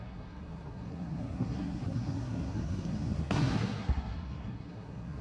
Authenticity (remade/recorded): remade